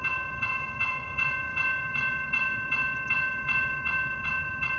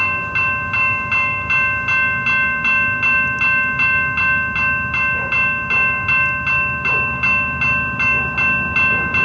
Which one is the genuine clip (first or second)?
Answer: second